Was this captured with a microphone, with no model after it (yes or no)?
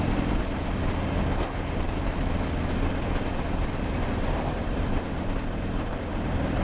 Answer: yes